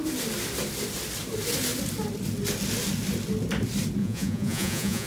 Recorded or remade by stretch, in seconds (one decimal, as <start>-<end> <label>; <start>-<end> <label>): 0.0-4.0 recorded; 4.0-5.1 remade